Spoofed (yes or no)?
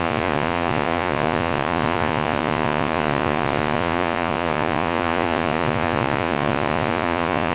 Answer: yes